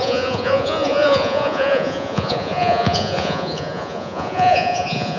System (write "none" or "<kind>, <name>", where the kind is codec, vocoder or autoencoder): vocoder, Vocos